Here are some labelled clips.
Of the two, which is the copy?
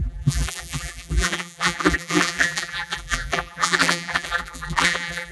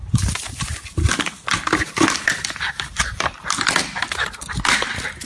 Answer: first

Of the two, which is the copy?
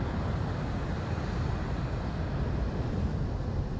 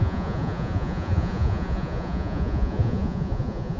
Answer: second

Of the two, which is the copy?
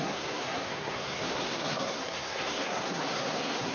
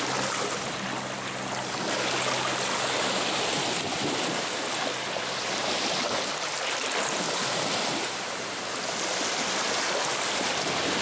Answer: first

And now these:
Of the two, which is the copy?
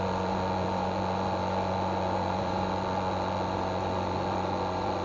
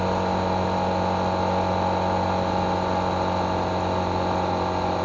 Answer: first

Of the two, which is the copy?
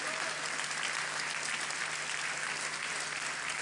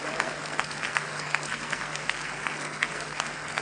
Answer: second